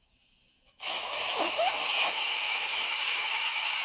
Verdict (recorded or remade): remade